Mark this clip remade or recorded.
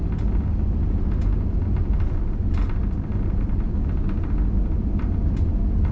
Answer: recorded